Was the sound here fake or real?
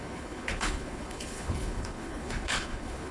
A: fake